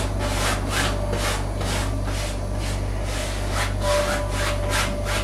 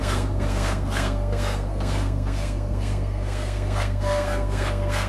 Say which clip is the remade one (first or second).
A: second